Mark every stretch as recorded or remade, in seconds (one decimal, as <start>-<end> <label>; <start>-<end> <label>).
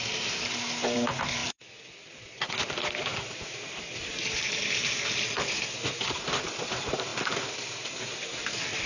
0.0-8.9 recorded